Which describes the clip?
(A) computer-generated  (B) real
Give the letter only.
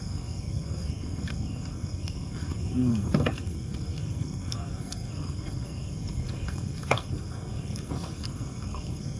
A